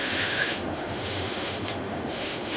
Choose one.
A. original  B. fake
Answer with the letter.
B